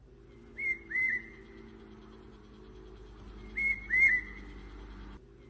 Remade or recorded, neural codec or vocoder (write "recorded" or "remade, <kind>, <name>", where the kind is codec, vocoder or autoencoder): recorded